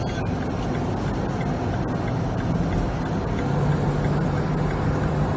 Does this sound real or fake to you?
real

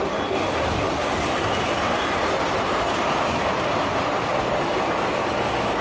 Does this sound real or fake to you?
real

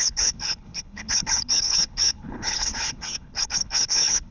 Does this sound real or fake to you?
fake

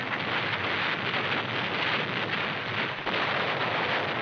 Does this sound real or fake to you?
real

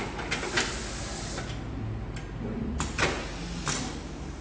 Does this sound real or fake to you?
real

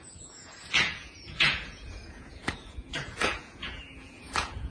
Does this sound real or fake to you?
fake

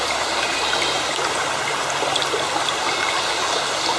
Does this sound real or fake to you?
real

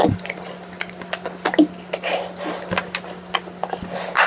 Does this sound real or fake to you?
real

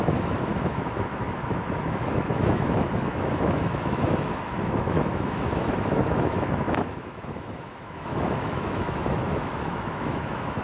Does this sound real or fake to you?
fake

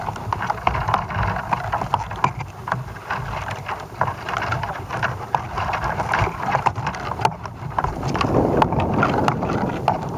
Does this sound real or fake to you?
fake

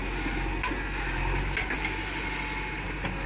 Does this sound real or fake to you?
real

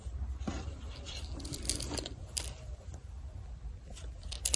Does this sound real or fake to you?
real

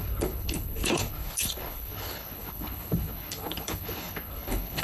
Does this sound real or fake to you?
fake